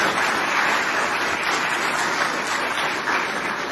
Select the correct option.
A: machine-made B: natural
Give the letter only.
B